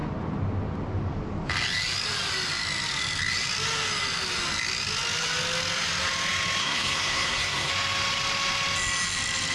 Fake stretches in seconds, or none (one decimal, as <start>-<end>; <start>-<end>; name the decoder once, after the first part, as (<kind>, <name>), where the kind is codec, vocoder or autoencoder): 6.6-7.7 (codec, SNAC)